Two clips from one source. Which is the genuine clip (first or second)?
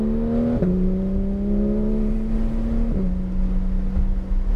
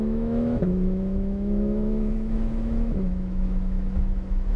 first